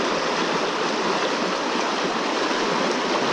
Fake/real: real